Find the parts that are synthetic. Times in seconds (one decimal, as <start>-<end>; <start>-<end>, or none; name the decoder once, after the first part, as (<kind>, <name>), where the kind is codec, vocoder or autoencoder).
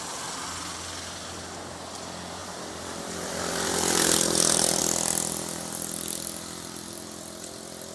2.4-4.8 (vocoder, BigVGAN v2)